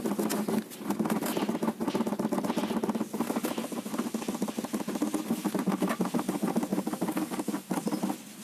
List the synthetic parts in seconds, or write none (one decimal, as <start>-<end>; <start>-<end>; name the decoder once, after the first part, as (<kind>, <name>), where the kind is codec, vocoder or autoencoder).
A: 6.7-7.7 (codec, DAC)